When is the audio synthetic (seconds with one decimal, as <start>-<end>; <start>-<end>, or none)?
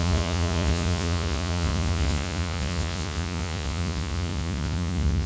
0.0-5.3